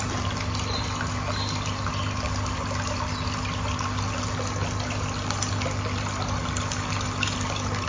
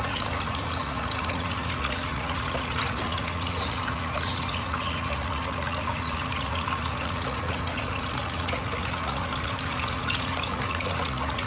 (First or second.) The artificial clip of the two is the second